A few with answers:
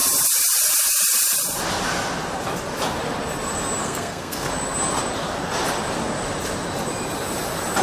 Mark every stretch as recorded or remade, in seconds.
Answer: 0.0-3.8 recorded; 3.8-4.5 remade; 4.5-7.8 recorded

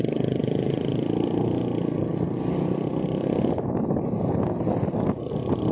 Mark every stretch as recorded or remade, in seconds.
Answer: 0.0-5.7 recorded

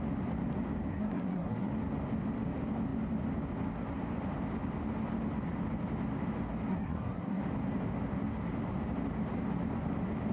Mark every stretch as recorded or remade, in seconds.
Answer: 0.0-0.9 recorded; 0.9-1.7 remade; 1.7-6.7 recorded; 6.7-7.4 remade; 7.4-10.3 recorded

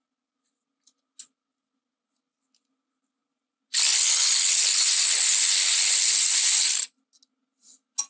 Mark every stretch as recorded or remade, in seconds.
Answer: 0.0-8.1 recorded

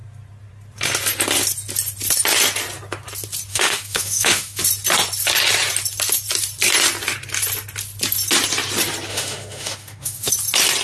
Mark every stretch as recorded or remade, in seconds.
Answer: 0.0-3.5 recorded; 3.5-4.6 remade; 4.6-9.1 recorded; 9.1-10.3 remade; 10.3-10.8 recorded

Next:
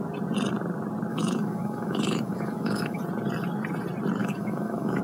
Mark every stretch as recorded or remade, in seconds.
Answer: 0.0-1.1 recorded; 1.1-3.0 remade; 3.0-4.2 recorded; 4.2-5.0 remade

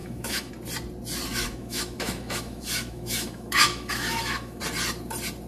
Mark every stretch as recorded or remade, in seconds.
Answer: 0.0-0.5 remade; 0.5-1.3 recorded; 1.3-4.6 remade; 4.6-5.5 recorded

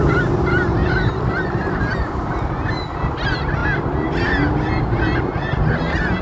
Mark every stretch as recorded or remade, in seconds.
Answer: 0.0-6.2 recorded